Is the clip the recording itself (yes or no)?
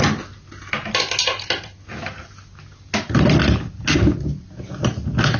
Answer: yes